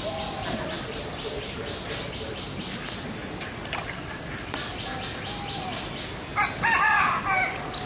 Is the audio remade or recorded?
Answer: recorded